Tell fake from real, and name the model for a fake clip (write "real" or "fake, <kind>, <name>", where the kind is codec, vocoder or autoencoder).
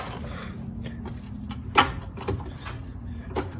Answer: real